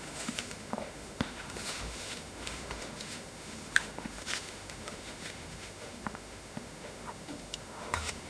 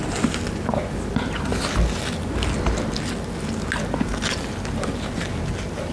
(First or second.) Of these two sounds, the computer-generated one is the first